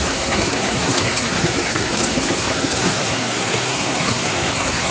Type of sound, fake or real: fake